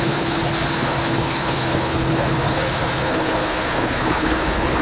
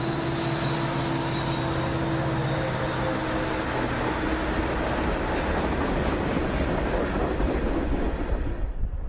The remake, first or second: first